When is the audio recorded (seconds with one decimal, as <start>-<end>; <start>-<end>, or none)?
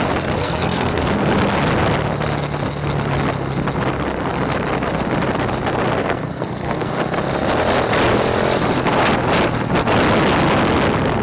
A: 0.0-0.4; 1.0-6.0; 6.9-11.2